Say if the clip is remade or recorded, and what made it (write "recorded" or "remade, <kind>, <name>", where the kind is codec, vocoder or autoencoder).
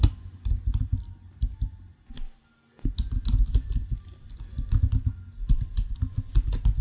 recorded